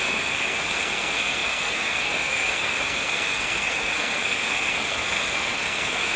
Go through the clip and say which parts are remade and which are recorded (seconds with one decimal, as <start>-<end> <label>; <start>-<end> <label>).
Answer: 0.0-6.2 remade